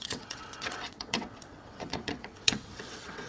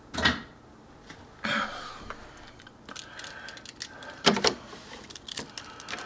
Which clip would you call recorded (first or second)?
second